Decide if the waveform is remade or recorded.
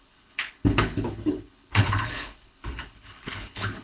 remade